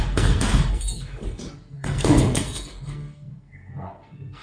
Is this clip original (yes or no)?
no